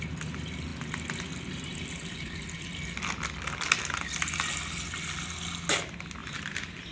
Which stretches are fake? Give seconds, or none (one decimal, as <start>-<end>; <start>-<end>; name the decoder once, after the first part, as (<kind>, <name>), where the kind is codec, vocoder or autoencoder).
6.2-6.9 (vocoder, BigVGAN v2)